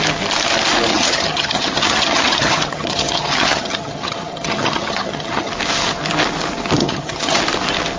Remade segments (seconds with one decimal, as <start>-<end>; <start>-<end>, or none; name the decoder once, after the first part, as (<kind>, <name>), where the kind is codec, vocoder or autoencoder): 0.9-5.5 (vocoder, HiFi-GAN); 6.8-7.4